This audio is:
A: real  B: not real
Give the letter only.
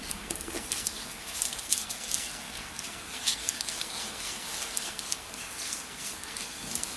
B